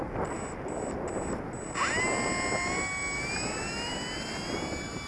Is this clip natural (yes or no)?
yes